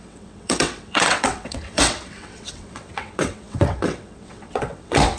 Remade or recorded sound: remade